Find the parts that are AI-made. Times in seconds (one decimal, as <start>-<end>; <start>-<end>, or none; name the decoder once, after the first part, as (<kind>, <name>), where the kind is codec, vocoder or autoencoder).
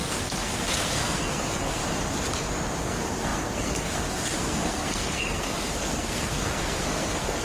0.0-1.8 (codec, SNAC); 2.8-7.4